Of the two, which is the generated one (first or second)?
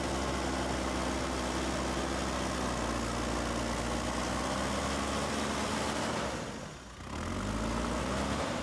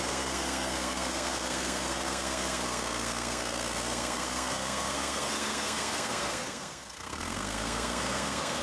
second